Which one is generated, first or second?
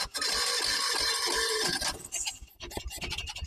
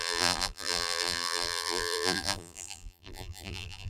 second